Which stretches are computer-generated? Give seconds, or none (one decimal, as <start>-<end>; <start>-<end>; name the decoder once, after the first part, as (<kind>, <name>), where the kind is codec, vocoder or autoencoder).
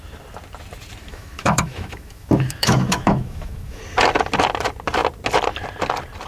1.1-3.8 (autoencoder, DAC-VAE)